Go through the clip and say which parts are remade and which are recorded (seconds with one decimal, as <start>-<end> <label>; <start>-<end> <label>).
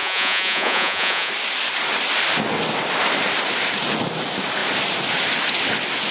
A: 0.0-1.3 remade; 1.3-6.1 recorded